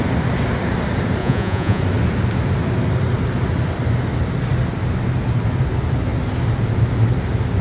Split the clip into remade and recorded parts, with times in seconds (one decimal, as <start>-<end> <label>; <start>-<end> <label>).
0.0-1.2 recorded; 1.2-1.8 remade; 1.8-7.6 recorded

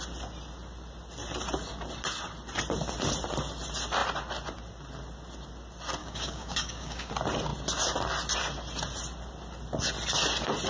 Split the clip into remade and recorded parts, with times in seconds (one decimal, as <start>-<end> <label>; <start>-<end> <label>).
0.0-6.0 recorded; 6.0-7.1 remade; 7.1-10.7 recorded

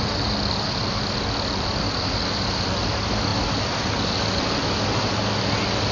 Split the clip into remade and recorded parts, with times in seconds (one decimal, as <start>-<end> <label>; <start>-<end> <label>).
0.0-5.9 recorded

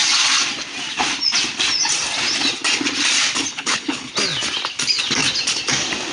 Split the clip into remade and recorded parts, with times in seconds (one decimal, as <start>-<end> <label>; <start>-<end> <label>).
0.0-3.5 recorded; 3.5-4.1 remade; 4.1-6.1 recorded

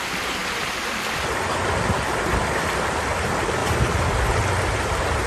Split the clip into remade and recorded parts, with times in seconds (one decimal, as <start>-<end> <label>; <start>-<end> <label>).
0.0-5.3 recorded

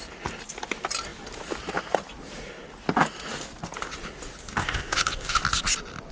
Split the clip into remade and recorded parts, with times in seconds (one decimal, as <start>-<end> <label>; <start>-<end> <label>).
0.0-4.4 recorded; 4.4-5.4 remade; 5.4-6.1 recorded

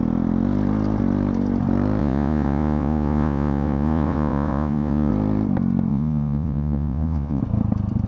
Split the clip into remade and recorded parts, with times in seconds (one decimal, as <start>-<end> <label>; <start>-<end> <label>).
0.0-2.0 recorded; 2.0-5.1 remade; 5.1-5.9 recorded; 5.9-7.4 remade; 7.4-8.1 recorded

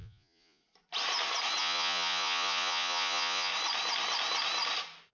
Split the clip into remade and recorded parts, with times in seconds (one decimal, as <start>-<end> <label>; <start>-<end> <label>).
0.0-0.6 remade; 0.6-1.6 recorded; 1.6-3.5 remade; 3.5-5.1 recorded